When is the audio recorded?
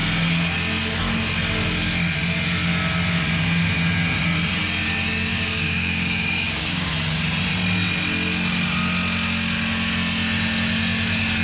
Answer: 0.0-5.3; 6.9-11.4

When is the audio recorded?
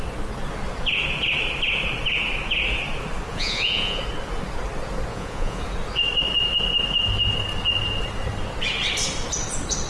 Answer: 0.0-3.3; 4.0-5.1; 5.6-9.9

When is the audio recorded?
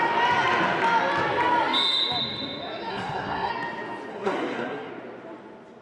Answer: 0.0-2.9; 3.5-4.1; 4.9-5.8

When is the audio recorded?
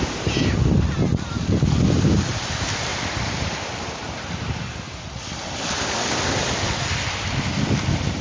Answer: 0.0-8.2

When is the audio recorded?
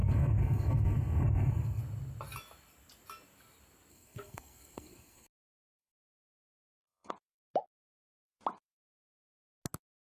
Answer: 1.8-3.9; 7.1-10.1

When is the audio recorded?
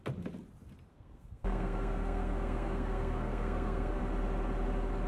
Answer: 0.0-0.9; 4.0-5.1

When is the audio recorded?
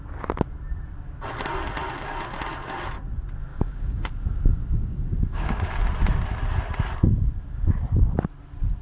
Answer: 0.0-3.5; 4.1-4.6; 5.7-8.8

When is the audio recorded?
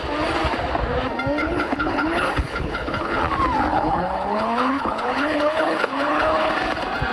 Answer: 0.0-1.4; 3.2-3.7; 6.5-7.1